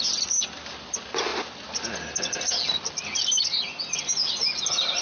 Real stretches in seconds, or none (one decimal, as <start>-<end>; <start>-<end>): 0.0-5.0

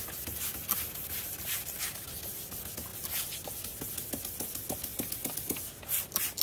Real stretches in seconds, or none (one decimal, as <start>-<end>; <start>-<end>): 0.0-6.4

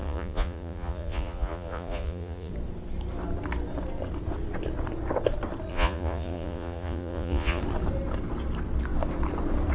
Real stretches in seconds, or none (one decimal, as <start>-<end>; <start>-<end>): 2.5-5.7; 7.6-9.7

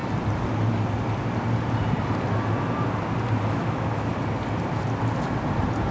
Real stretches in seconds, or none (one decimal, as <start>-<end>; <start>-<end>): 0.0-3.5; 4.1-5.9